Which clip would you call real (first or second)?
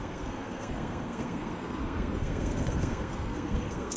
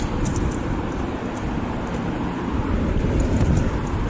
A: second